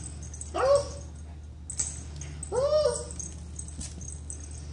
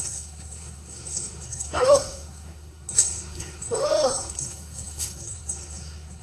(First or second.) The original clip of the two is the first